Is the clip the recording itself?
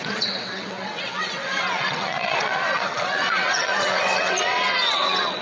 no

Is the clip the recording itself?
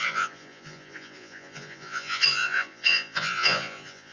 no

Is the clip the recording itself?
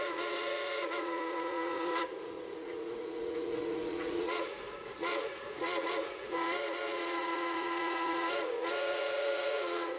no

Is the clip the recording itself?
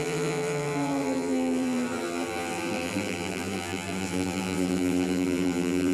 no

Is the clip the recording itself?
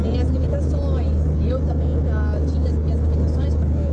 yes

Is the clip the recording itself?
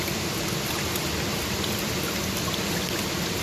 no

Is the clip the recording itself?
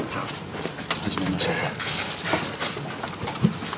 yes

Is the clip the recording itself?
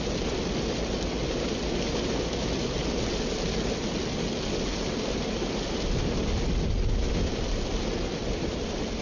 yes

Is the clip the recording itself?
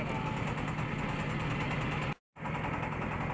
yes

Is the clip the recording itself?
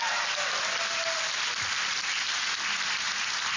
yes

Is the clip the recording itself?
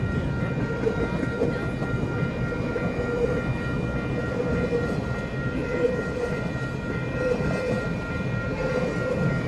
yes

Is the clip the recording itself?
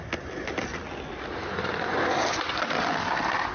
yes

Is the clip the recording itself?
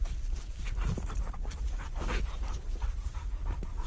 no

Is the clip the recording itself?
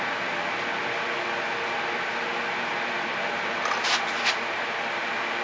yes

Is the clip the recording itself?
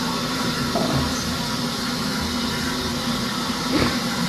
yes